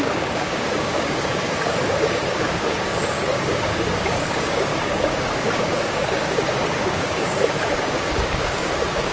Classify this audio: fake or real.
fake